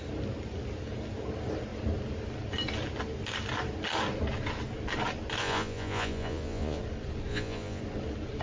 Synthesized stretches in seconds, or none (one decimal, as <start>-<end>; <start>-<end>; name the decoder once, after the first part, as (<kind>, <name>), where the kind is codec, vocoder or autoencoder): 5.4-6.8 (vocoder, Vocos); 7.3-7.8